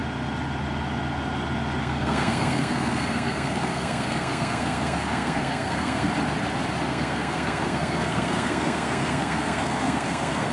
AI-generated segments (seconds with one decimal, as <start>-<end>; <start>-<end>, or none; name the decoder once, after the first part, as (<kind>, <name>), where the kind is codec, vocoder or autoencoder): 1.8-6.1 (codec, SNAC); 6.9-10.5